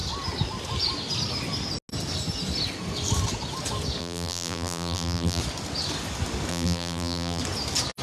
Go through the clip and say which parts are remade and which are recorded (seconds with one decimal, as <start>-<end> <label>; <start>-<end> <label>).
0.0-4.0 recorded; 4.0-5.4 remade; 5.4-6.5 recorded; 6.5-7.4 remade; 7.4-8.0 recorded

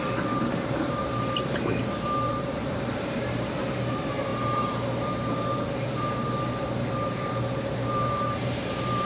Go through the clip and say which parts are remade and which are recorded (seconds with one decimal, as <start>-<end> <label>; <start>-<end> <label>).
0.0-9.0 remade